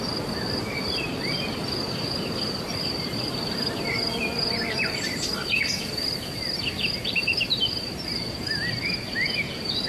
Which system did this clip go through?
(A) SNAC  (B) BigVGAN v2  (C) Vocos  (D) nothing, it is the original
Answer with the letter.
B